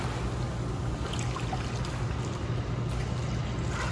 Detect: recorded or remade recorded